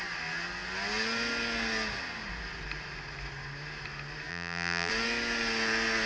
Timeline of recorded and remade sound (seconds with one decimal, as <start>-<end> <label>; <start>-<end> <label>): 0.0-4.3 recorded; 4.3-4.9 remade; 4.9-6.1 recorded